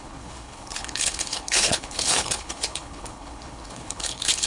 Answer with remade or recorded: remade